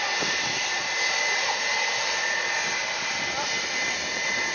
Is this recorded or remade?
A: recorded